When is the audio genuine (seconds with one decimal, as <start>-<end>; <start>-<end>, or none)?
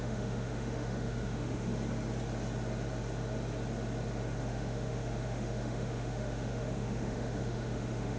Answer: 1.7-4.4